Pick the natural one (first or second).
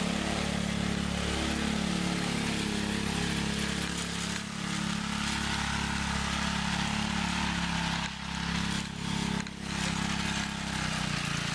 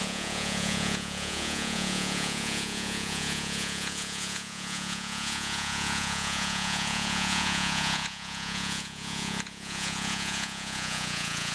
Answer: first